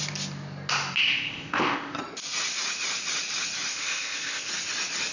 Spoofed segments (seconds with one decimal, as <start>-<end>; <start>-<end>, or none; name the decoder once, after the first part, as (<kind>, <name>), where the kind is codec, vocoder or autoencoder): 1.0-2.0 (codec, ZipCodec); 3.7-4.5